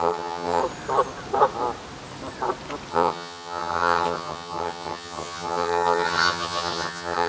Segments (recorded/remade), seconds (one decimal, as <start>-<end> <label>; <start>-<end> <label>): 0.0-0.6 remade; 0.6-2.9 recorded; 2.9-7.3 remade